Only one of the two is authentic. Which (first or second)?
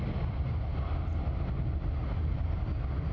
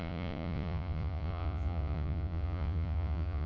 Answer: first